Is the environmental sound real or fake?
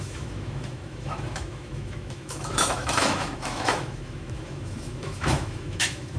fake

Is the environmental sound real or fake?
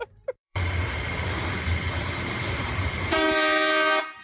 fake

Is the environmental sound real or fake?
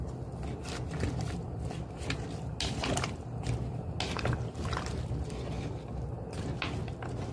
real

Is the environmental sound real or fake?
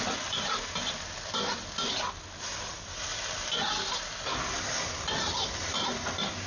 real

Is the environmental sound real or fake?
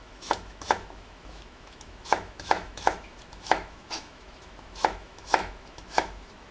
fake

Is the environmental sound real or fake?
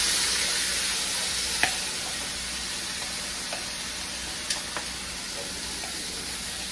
real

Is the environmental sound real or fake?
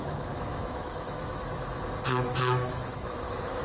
fake